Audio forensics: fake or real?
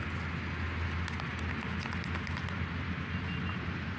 real